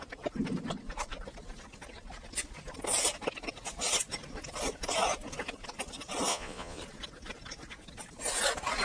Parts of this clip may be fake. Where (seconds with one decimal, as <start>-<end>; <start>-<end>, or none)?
6.3-6.8